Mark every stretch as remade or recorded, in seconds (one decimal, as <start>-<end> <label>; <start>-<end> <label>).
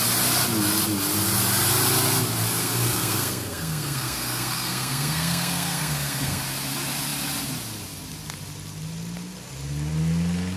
0.0-2.6 recorded; 2.6-6.4 remade; 6.4-10.6 recorded